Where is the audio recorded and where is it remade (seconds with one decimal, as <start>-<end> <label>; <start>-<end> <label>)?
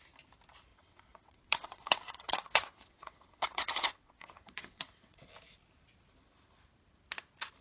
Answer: 0.0-0.7 recorded; 0.7-5.3 remade; 5.3-7.6 recorded